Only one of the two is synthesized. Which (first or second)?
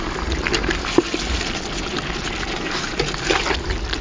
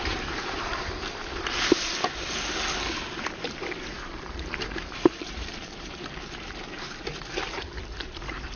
second